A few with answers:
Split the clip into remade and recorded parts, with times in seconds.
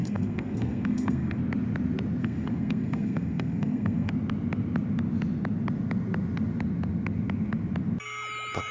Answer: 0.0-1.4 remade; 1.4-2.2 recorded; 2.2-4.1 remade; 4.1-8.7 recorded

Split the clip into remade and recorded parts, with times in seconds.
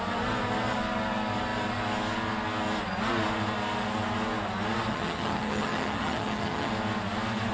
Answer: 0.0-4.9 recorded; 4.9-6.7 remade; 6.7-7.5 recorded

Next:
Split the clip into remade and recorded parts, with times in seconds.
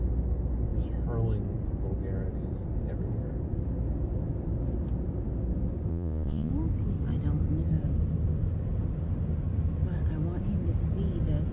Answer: 0.0-5.9 recorded; 5.9-6.5 remade; 6.5-11.5 recorded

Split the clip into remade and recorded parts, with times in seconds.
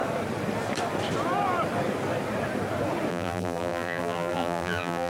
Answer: 0.0-3.1 recorded; 3.1-5.1 remade